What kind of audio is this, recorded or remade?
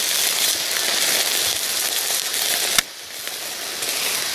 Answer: recorded